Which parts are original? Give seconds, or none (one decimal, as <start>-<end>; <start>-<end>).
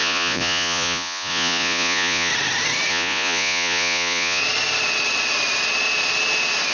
2.3-2.9; 4.4-6.7